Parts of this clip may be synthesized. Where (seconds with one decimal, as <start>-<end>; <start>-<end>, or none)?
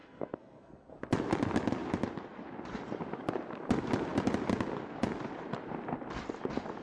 0.0-0.9